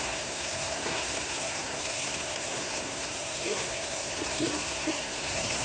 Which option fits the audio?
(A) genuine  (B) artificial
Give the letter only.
B